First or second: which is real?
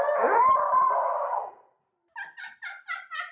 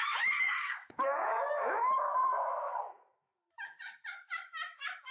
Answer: first